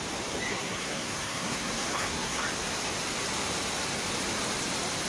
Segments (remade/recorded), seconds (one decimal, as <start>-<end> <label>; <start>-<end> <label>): 0.0-0.5 recorded; 0.5-2.4 remade; 2.4-5.1 recorded